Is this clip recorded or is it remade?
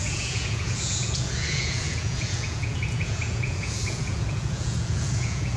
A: remade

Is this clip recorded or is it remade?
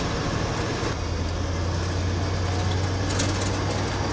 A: recorded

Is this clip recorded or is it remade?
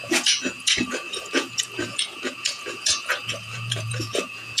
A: remade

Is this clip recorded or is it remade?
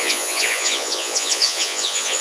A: remade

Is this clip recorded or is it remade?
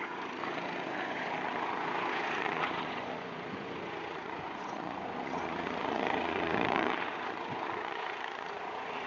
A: remade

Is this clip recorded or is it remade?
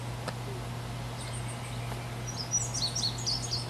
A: recorded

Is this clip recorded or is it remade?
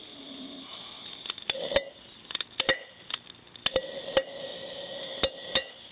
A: recorded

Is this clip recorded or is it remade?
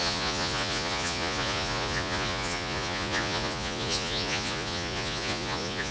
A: remade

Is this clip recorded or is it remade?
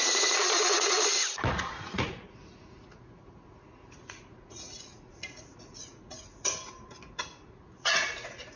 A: remade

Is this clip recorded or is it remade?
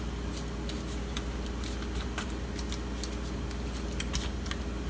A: recorded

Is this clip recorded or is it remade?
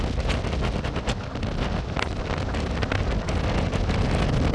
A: recorded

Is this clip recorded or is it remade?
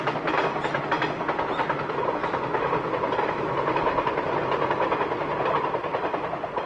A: recorded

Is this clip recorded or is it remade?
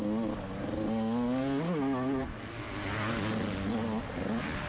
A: recorded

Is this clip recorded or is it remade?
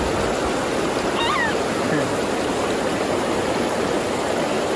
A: recorded